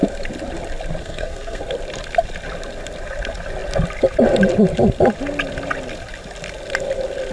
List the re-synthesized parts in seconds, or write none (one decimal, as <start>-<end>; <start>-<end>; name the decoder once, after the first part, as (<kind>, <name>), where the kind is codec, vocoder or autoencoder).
1.0-1.6 (codec, SNAC)